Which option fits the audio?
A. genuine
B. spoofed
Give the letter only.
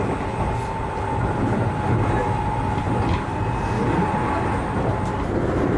A